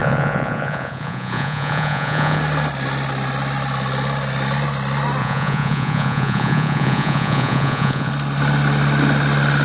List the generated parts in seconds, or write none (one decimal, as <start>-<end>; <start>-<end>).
0.0-2.4; 5.2-8.1